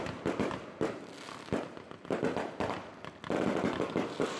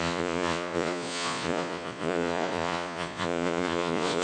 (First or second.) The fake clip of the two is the second